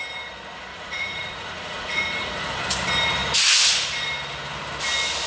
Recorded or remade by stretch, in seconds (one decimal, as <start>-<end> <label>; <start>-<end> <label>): 0.0-0.7 recorded; 0.7-2.6 remade; 2.6-5.3 recorded